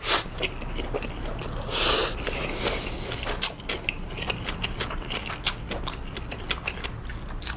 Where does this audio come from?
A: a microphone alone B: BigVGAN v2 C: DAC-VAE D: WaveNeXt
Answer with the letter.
A